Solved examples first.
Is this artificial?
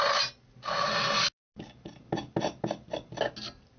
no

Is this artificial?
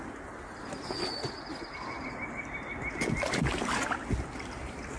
no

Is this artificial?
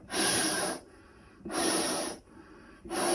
yes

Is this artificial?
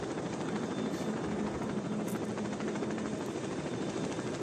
no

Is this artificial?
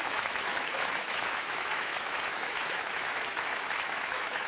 yes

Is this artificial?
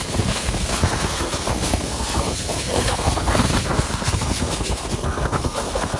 yes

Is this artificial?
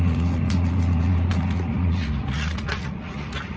yes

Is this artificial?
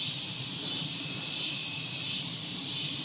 yes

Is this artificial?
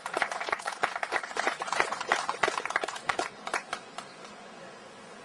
yes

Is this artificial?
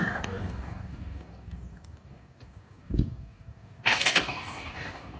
yes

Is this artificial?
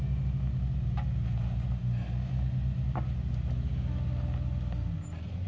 no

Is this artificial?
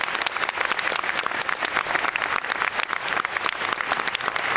no